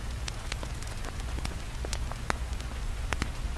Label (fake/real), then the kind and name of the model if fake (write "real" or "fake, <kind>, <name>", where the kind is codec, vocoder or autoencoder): fake, vocoder, Vocos